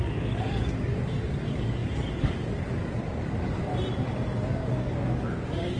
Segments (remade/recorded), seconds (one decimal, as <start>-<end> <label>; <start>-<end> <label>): 0.0-3.7 remade; 3.7-4.5 recorded; 4.5-5.8 remade